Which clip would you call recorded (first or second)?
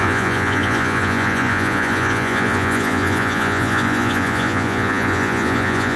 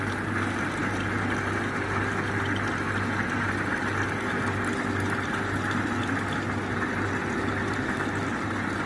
second